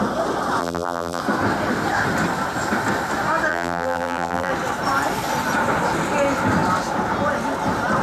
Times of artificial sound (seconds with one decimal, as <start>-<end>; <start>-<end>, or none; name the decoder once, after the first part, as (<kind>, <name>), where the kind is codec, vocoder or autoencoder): 0.6-1.2 (vocoder, BigVGAN v2); 3.5-4.5